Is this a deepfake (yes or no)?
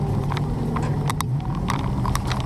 no